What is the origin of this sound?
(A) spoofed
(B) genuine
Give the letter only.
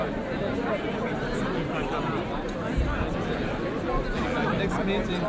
B